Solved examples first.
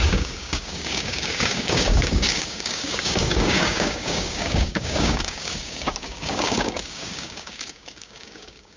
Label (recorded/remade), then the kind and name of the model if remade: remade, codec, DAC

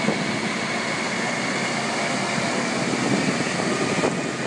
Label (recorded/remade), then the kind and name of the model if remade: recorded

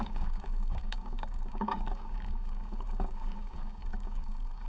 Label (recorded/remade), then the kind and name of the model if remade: remade, codec, DAC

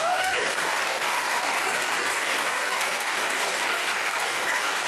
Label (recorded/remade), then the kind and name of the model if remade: remade, codec, DAC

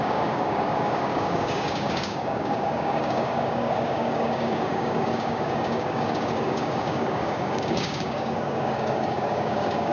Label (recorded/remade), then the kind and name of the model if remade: remade, codec, DAC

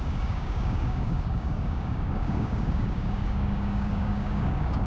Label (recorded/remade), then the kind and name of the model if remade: remade, codec, DAC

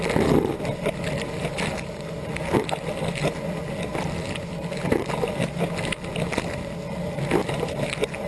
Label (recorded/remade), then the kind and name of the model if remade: recorded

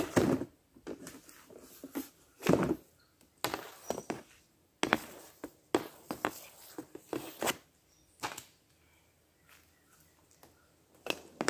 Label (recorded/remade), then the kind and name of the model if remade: recorded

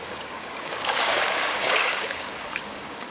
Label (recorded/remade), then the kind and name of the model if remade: remade, codec, DAC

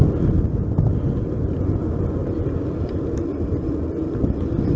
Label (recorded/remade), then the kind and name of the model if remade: recorded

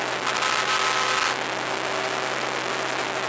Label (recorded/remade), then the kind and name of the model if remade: recorded